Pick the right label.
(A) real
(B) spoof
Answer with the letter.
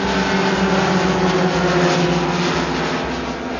A